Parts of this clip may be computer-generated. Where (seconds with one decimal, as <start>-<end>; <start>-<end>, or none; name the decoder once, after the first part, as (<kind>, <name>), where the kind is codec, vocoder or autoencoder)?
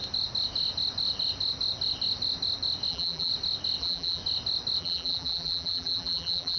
2.9-3.3 (vocoder, BigVGAN v2); 3.8-4.2; 4.8-6.6